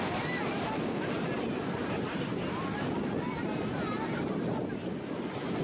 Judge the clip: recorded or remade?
recorded